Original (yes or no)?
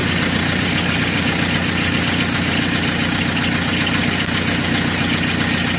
yes